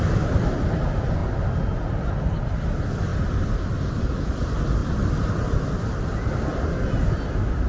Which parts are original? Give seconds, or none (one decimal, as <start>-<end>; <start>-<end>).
0.0-3.1; 4.0-4.8; 7.0-7.7